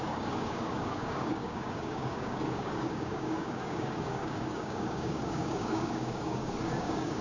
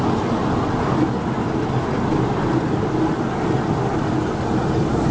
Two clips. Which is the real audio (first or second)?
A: second